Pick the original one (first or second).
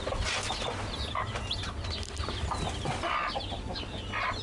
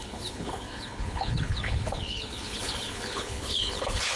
first